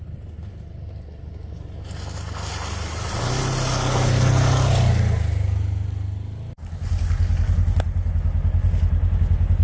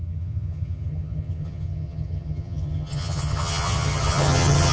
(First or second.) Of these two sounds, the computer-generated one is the second